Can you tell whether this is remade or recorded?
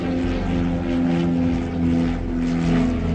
recorded